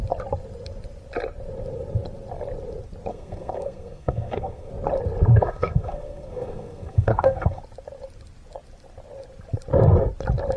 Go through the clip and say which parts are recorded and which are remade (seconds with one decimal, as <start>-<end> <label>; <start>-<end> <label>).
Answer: 0.0-3.1 recorded; 3.1-4.7 remade; 4.7-5.3 recorded; 5.3-7.6 remade; 7.6-10.6 recorded